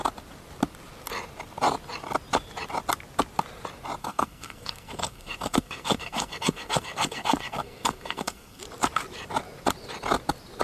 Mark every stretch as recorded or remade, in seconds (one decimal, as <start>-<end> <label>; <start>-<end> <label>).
0.0-4.0 recorded; 4.0-8.6 remade; 8.6-10.6 recorded